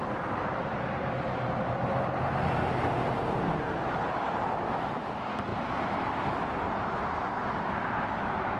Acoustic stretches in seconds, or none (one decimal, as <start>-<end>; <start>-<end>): 0.0-8.6